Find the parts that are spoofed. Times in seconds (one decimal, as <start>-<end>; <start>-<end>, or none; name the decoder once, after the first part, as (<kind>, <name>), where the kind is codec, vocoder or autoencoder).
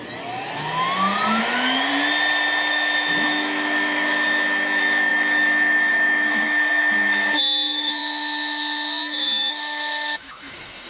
1.4-1.9 (autoencoder, DAC-VAE); 2.7-10.9